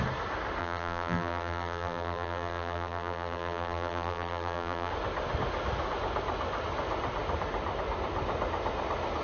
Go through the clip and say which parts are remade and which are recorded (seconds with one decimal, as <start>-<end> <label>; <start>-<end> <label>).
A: 0.0-0.6 recorded; 0.6-4.9 remade; 4.9-9.2 recorded